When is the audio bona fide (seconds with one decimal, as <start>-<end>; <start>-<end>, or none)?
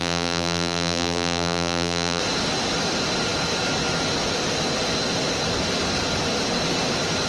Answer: 2.2-7.3